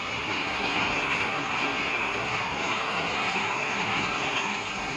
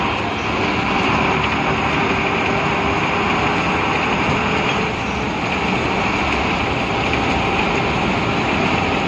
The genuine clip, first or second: second